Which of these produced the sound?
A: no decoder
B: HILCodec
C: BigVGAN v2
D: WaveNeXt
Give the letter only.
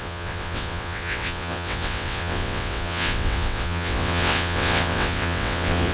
D